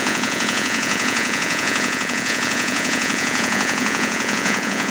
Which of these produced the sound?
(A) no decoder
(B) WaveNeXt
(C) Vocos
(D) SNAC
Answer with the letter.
C